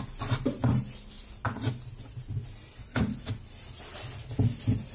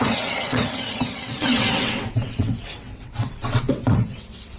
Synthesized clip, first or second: second